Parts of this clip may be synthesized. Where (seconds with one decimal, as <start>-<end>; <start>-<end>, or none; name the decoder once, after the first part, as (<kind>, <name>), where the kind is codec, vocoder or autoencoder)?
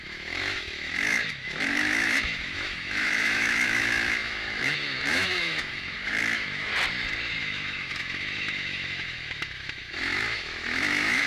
0.0-6.7 (autoencoder, DAC-VAE); 7.4-11.3